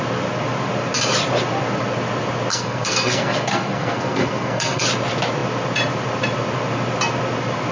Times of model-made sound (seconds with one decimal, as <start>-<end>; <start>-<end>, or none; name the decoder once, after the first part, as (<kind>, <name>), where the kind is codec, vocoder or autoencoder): 2.5-4.8 (codec, SNAC)